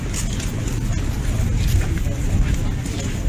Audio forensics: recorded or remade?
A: recorded